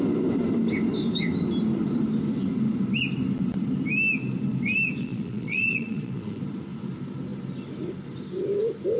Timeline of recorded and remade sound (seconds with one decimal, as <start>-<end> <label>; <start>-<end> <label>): 0.0-5.0 recorded; 5.0-6.4 remade; 6.4-9.0 recorded